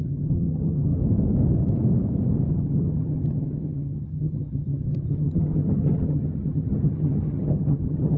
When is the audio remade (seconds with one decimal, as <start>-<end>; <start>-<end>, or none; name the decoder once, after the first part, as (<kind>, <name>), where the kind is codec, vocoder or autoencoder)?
0.0-1.0 (vocoder, HiFi-GAN); 2.5-8.2